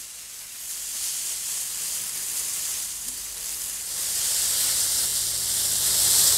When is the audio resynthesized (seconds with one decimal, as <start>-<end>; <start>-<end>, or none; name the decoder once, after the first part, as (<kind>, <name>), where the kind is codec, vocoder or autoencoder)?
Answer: 2.5-3.3 (vocoder, BigVGAN v2)